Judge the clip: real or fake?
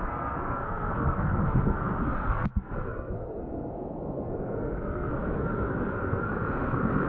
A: fake